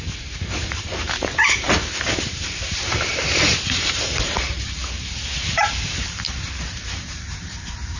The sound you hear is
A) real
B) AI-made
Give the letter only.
B